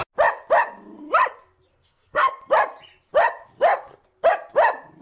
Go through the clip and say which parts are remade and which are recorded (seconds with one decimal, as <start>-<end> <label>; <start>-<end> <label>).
0.0-1.8 recorded; 1.8-2.3 remade; 2.3-5.0 recorded

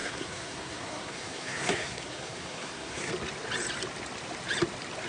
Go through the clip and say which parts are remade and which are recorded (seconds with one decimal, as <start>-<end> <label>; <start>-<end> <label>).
0.0-3.1 remade; 3.1-5.1 recorded